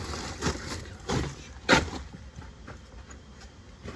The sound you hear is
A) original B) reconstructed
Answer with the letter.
B